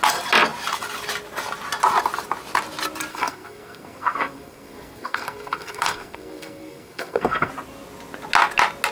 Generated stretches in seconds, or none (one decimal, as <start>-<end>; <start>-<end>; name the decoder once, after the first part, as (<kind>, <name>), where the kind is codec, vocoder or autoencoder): 3.1-7.5 (codec, SNAC)